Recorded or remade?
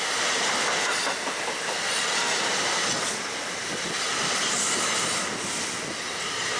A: recorded